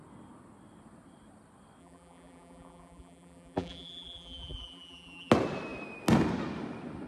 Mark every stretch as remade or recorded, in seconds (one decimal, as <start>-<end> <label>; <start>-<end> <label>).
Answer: 0.0-1.8 recorded; 1.8-5.3 remade; 5.3-7.1 recorded